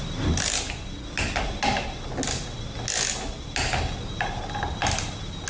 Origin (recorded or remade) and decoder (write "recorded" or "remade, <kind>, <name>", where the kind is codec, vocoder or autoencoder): recorded